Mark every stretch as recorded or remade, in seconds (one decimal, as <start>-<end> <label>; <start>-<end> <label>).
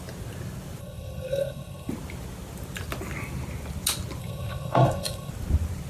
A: 0.0-0.8 recorded; 0.8-1.9 remade; 1.9-4.2 recorded; 4.2-5.3 remade; 5.3-5.9 recorded